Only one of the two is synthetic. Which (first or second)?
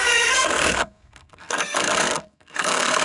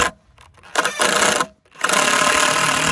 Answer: first